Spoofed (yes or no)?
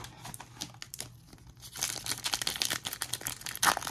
no